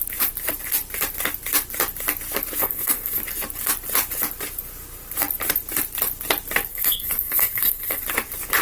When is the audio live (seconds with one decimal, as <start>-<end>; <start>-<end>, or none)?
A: 0.0-2.6; 3.2-6.7; 8.0-8.6